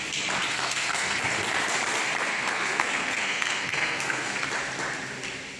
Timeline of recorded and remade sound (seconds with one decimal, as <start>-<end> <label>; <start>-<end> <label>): 0.0-0.5 recorded; 0.5-1.2 remade; 1.2-2.3 recorded; 2.3-4.5 remade; 4.5-5.6 recorded